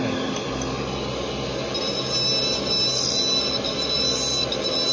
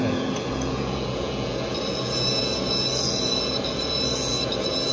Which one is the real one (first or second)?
first